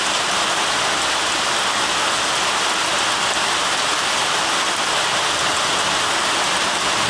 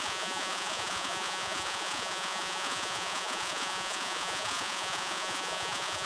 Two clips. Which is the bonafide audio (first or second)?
first